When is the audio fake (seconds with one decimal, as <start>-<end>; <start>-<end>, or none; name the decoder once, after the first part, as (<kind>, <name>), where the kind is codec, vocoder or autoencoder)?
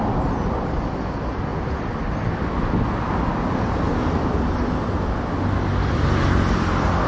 none